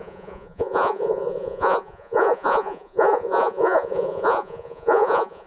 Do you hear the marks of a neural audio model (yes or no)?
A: yes